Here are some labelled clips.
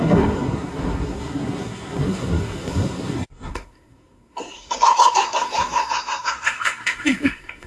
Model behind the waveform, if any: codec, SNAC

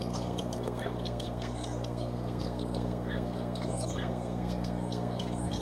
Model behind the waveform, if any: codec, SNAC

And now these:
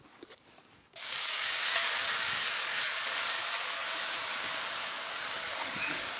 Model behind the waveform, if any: codec, DAC